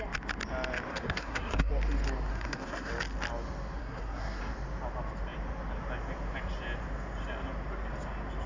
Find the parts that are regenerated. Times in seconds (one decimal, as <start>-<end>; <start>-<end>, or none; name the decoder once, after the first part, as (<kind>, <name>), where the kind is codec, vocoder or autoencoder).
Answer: 0.9-1.7 (codec, SNAC); 2.3-2.9; 3.8-4.4